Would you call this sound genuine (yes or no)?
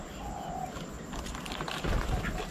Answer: yes